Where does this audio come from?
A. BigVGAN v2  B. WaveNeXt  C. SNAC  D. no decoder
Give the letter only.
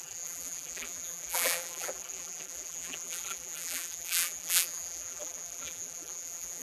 A